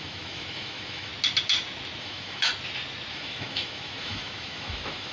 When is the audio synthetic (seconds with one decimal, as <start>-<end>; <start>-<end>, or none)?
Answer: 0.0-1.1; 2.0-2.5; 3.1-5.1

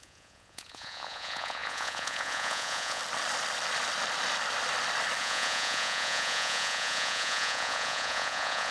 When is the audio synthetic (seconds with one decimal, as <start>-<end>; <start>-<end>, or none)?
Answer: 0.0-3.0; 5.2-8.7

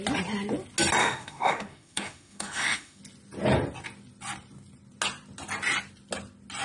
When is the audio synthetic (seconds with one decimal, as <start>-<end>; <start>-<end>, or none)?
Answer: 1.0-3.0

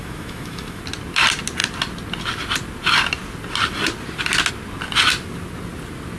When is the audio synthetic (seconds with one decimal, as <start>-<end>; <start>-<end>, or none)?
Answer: 0.0-0.8